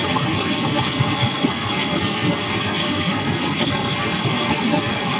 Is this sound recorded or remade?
remade